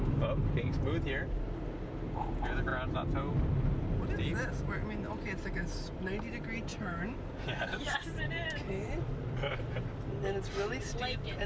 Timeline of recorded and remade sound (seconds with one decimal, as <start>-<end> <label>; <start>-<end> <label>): 0.0-11.5 recorded